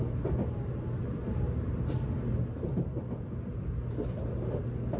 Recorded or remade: recorded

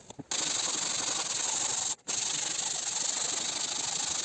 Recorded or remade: recorded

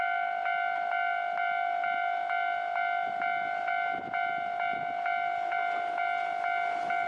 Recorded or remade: recorded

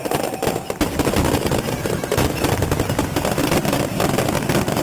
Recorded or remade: recorded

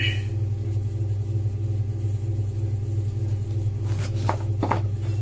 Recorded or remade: recorded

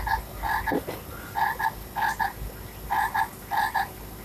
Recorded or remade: recorded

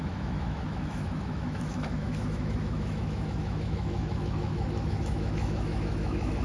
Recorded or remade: remade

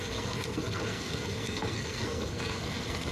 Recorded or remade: remade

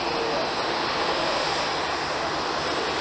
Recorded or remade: recorded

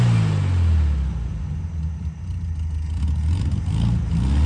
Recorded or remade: recorded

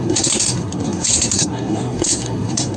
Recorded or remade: remade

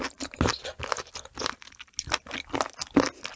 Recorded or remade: recorded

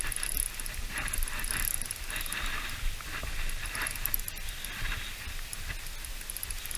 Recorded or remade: recorded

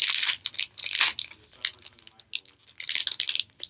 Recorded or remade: recorded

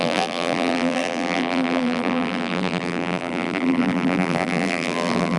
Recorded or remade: remade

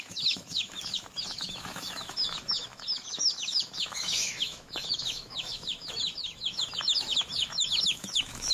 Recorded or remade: remade